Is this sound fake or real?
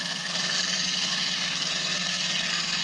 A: fake